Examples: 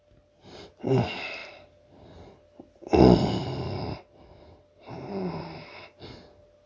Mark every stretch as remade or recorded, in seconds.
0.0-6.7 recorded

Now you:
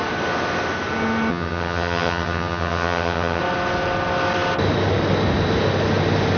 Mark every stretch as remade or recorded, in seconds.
0.0-1.3 recorded; 1.3-3.4 remade; 3.4-6.4 recorded

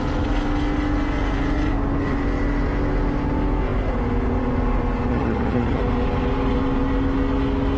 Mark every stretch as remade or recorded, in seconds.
0.0-5.1 recorded; 5.1-5.8 remade; 5.8-7.8 recorded

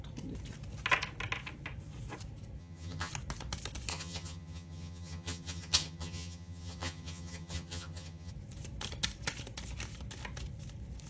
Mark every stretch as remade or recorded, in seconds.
0.0-2.6 recorded; 2.6-3.1 remade; 3.1-3.9 recorded; 3.9-8.3 remade; 8.3-11.1 recorded

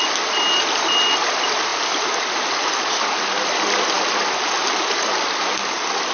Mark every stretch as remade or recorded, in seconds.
0.0-6.1 recorded

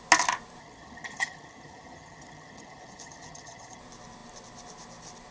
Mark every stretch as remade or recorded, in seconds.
0.0-0.6 recorded; 0.6-3.8 remade; 3.8-5.3 recorded

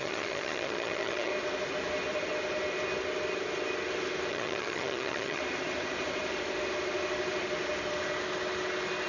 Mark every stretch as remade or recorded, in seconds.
0.0-1.3 remade; 1.3-4.3 recorded; 4.3-5.4 remade; 5.4-9.1 recorded